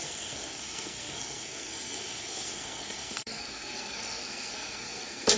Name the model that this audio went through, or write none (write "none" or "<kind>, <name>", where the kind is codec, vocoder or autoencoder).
codec, SNAC